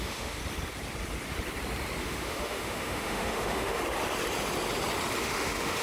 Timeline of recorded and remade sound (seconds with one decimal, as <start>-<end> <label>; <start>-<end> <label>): 0.0-0.4 remade; 0.4-2.0 recorded; 2.0-3.8 remade; 3.8-5.2 recorded; 5.2-5.8 remade